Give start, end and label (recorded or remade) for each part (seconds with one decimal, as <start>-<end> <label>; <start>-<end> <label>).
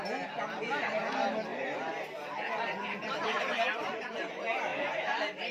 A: 0.0-1.5 recorded; 1.5-4.2 remade; 4.2-4.7 recorded; 4.7-5.5 remade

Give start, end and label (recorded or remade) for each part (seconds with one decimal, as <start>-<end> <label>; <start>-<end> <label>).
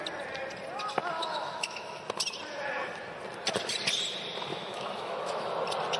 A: 0.0-1.2 recorded; 1.2-2.0 remade; 2.0-4.5 recorded; 4.5-5.5 remade; 5.5-6.0 recorded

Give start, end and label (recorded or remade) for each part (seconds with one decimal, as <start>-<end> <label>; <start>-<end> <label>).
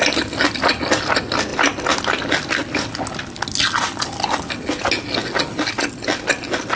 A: 0.0-6.8 recorded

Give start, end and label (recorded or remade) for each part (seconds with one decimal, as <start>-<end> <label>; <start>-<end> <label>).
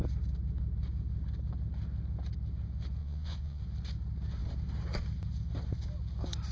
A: 0.0-3.0 recorded; 3.0-3.6 remade; 3.6-6.5 recorded